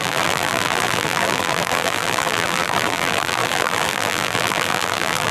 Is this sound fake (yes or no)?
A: yes